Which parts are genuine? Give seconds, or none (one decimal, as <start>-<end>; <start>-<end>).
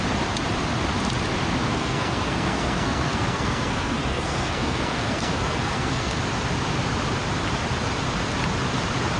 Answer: 0.0-1.7; 6.2-9.2